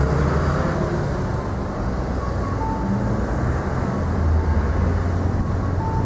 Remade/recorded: recorded